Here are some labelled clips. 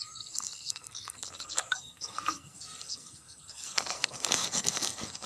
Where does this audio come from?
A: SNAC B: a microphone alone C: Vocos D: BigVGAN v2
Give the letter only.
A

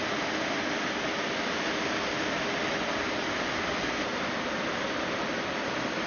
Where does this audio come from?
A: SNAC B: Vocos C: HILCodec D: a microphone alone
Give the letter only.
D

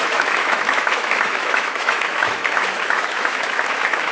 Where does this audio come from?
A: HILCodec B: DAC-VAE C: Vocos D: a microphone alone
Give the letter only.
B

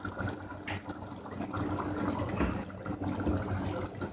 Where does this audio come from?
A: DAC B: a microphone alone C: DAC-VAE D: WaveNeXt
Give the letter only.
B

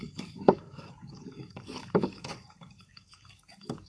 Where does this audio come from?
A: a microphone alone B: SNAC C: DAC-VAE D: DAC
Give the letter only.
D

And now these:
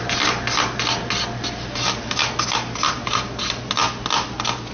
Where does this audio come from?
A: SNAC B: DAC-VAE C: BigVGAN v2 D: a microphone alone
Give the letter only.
D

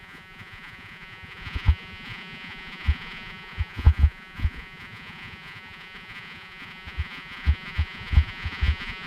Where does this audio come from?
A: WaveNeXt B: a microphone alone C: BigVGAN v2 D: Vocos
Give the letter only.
D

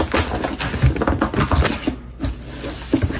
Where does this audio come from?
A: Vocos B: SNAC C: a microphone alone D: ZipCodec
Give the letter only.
C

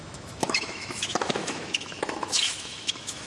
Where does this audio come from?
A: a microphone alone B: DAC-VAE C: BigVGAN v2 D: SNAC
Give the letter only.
B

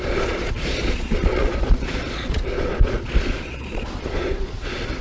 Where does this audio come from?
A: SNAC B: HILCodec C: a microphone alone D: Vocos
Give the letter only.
D